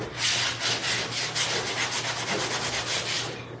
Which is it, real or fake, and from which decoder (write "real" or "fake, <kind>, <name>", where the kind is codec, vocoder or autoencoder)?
real